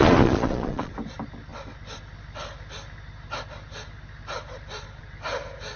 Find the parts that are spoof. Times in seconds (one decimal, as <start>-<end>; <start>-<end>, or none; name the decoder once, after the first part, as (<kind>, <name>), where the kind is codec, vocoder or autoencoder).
0.0-0.9 (vocoder, Vocos)